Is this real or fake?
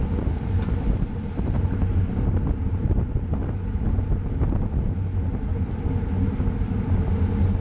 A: real